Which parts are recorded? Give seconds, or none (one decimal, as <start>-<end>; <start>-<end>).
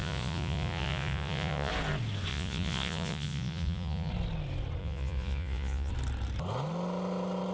1.7-2.3; 4.1-4.8; 5.9-7.5